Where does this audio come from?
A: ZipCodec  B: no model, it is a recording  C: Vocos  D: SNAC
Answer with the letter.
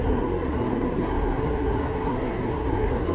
D